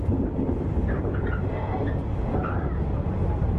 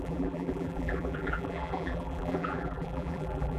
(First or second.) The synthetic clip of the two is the second